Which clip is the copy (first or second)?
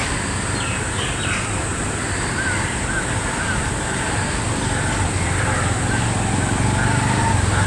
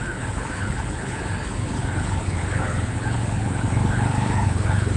second